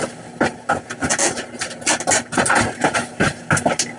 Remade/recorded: recorded